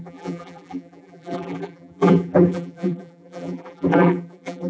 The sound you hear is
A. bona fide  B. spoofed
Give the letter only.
B